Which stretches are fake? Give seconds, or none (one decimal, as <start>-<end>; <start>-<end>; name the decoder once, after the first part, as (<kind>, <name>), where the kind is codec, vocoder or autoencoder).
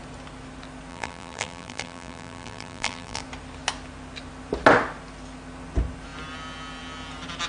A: 0.9-3.2 (vocoder, BigVGAN v2)